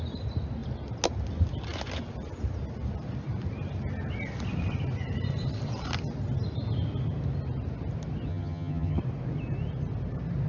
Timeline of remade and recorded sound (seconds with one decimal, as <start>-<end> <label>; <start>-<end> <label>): 0.0-8.3 recorded; 8.3-9.0 remade; 9.0-10.5 recorded